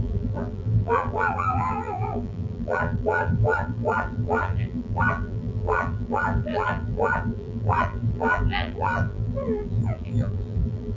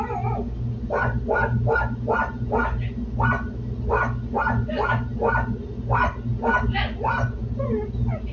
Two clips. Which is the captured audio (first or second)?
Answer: second